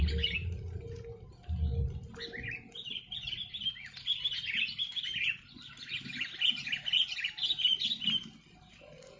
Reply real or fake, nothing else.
real